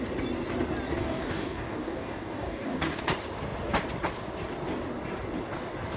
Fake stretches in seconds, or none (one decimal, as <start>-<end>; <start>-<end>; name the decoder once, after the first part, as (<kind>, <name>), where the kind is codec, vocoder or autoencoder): 1.0-3.0 (codec, DAC)

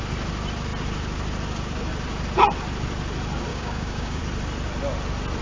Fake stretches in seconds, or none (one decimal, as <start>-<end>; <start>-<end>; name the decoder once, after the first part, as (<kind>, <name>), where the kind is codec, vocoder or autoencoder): 3.5-4.2 (codec, DAC)

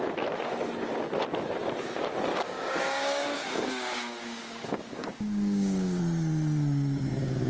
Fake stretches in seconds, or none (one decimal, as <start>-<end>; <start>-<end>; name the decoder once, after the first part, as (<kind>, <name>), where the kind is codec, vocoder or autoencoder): 2.3-6.0 (codec, DAC)

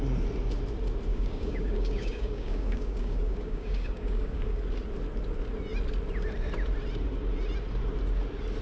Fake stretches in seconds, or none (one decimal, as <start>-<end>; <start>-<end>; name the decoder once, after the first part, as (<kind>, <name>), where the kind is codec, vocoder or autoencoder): 1.1-4.6 (codec, DAC)